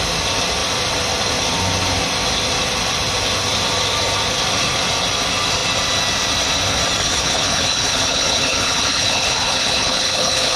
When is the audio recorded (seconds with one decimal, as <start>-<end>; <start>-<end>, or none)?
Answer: 0.0-7.0